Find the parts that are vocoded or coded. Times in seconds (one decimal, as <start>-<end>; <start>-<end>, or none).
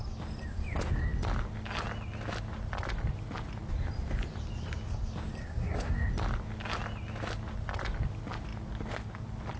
5.4-6.1